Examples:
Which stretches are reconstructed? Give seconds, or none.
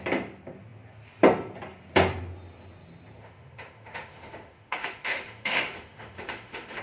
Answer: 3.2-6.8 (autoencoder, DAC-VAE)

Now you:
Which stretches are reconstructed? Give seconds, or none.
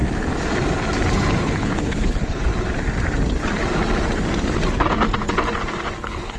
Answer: 1.4-2.5 (codec, HILCodec); 6.0-6.4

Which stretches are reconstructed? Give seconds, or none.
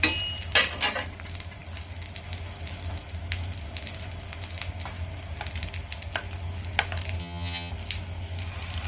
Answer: 7.2-7.7 (vocoder, HiFi-GAN)